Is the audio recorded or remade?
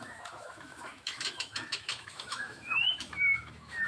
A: remade